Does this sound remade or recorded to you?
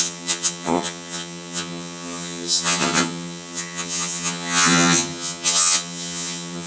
remade